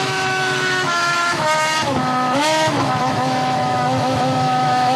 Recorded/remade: remade